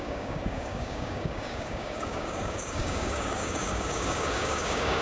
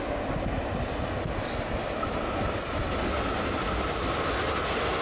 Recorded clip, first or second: second